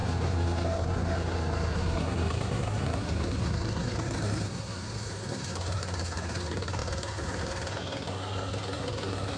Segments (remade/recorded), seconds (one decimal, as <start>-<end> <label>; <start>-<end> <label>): 0.0-9.4 remade